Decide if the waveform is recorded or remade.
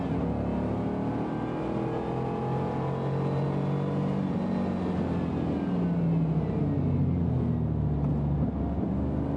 recorded